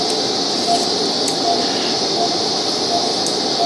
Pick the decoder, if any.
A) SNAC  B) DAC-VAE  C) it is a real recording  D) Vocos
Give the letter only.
C